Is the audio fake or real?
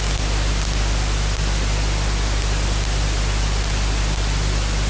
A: real